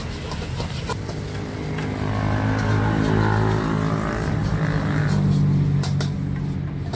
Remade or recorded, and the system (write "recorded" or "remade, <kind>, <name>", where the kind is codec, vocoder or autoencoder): recorded